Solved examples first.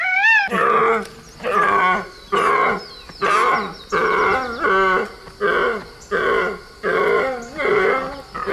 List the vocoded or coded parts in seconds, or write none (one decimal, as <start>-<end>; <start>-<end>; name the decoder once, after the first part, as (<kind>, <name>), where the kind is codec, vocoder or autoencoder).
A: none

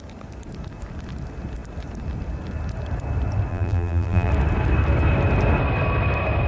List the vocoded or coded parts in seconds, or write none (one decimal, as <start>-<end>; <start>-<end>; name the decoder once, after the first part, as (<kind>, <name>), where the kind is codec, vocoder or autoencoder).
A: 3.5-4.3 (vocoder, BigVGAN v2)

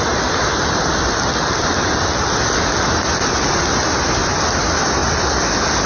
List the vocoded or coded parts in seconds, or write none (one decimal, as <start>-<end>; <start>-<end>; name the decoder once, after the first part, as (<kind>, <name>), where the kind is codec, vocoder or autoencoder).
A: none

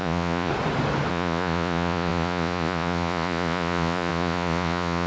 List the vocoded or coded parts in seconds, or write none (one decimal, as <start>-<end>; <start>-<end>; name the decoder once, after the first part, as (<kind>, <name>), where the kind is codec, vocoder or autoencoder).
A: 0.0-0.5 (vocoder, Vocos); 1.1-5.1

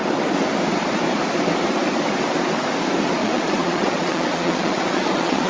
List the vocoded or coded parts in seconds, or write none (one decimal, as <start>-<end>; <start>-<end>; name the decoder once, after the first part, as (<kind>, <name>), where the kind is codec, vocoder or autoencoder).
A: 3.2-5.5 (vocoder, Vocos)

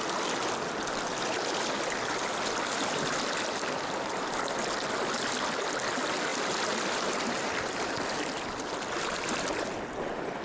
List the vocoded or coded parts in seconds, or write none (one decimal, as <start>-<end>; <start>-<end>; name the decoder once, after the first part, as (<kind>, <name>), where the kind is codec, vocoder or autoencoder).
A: none

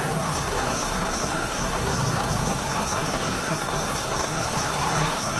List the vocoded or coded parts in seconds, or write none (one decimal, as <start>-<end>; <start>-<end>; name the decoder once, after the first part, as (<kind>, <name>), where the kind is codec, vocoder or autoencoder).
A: 0.0-5.4 (codec, SNAC)

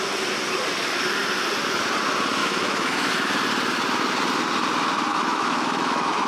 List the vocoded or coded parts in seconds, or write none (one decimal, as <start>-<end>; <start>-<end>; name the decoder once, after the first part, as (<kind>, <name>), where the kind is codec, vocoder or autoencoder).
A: 2.4-3.1 (autoencoder, DAC-VAE); 5.1-6.3